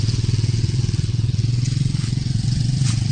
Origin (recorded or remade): remade